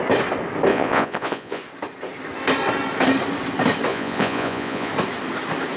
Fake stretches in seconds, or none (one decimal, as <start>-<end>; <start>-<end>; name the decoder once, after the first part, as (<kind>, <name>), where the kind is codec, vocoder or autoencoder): 0.7-1.6 (vocoder, Vocos); 3.9-4.9